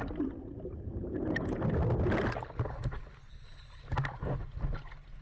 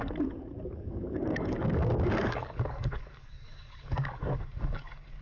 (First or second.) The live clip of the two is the first